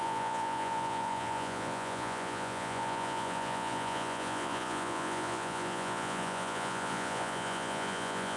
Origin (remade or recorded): remade